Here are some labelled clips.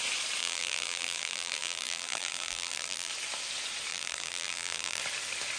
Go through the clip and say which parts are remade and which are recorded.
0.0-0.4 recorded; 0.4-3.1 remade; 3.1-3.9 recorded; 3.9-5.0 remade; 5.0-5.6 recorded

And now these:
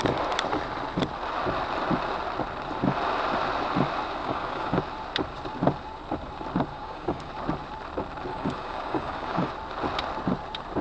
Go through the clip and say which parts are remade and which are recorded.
0.0-4.2 recorded; 4.2-4.8 remade; 4.8-6.7 recorded; 6.7-7.3 remade; 7.3-8.3 recorded; 8.3-9.5 remade; 9.5-10.8 recorded

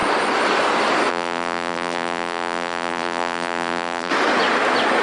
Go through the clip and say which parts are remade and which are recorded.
0.0-1.1 recorded; 1.1-4.1 remade; 4.1-5.0 recorded

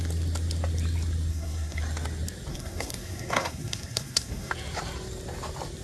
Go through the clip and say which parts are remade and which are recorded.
0.0-1.3 recorded; 1.3-1.8 remade; 1.8-2.5 recorded; 2.5-4.5 remade; 4.5-5.8 recorded

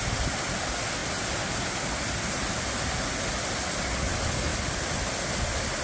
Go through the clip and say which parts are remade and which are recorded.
0.0-5.8 recorded

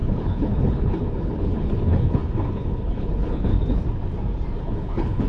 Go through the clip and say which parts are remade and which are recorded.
0.0-3.5 remade; 3.5-4.6 recorded; 4.6-5.3 remade

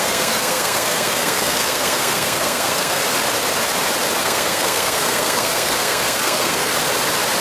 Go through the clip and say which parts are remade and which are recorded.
0.0-3.0 remade; 3.0-4.2 recorded; 4.2-6.7 remade; 6.7-7.4 recorded

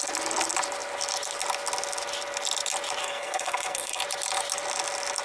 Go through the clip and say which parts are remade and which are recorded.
0.0-3.0 recorded; 3.0-4.0 remade; 4.0-5.2 recorded